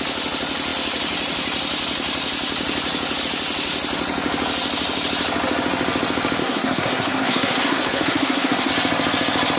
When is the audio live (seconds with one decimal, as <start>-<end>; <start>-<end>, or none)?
0.0-6.4; 8.7-9.6